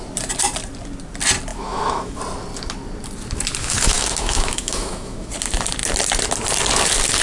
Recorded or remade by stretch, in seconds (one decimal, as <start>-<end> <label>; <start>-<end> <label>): 0.0-1.5 recorded; 1.5-2.2 remade; 2.2-3.6 recorded; 3.6-5.3 remade; 5.3-7.2 recorded